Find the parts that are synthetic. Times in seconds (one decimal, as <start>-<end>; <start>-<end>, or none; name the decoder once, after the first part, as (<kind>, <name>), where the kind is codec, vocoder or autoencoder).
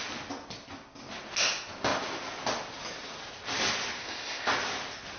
4.0-4.5 (codec, ZipCodec)